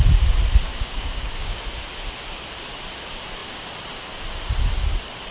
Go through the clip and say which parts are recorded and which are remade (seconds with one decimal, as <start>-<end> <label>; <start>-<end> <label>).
0.0-0.7 recorded; 0.7-1.6 remade; 1.6-5.3 recorded